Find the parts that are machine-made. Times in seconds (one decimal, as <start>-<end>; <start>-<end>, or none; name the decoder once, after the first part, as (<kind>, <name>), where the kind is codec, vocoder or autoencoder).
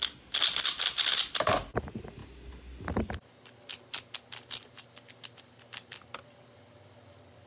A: none